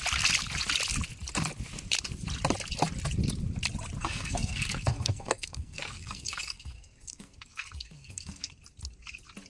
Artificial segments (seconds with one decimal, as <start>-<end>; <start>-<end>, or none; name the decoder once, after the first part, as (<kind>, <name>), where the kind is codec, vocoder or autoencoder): 4.0-8.5 (codec, SNAC)